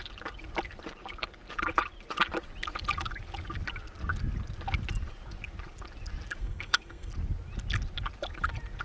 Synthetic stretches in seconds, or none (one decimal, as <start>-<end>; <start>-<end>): 6.4-7.1